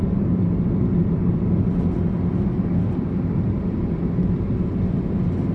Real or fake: real